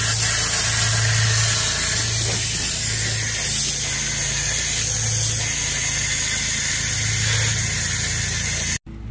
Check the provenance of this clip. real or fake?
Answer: real